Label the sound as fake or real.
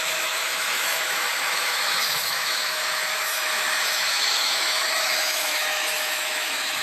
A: fake